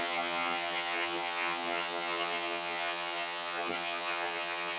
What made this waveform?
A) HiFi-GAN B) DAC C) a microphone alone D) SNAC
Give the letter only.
A